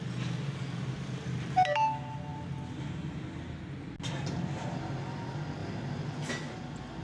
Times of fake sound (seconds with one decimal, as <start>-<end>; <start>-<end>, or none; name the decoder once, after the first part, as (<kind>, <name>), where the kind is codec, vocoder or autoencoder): none

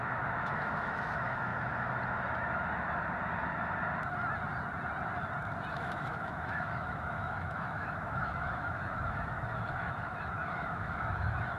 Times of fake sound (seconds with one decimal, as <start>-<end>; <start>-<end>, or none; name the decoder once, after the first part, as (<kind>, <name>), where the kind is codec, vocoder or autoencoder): 0.0-1.5 (autoencoder, DAC-VAE); 5.7-11.6

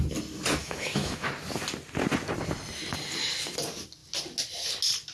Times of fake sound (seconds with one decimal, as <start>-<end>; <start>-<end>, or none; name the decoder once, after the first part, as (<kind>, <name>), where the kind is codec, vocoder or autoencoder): 0.6-1.3 (autoencoder, DAC-VAE)

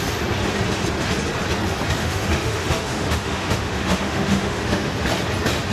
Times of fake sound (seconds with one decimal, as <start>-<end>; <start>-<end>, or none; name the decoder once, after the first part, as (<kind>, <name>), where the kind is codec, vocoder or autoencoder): 2.0-4.9 (autoencoder, DAC-VAE)

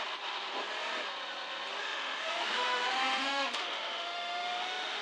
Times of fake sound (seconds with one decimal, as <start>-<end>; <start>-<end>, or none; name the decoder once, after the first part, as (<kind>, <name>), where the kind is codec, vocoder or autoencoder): 1.8-5.0 (autoencoder, DAC-VAE)

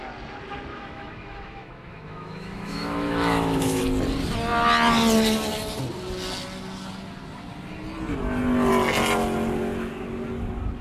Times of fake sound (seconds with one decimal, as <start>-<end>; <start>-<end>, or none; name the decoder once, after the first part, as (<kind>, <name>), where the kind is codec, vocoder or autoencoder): 0.7-3.8 (autoencoder, DAC-VAE)